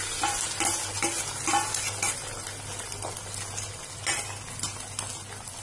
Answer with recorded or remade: recorded